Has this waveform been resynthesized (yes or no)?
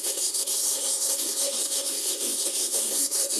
yes